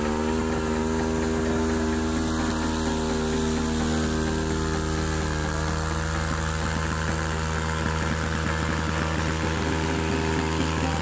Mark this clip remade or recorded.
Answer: recorded